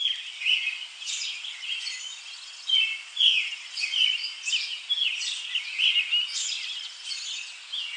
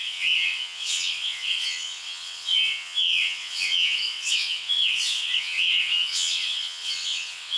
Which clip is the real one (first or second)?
first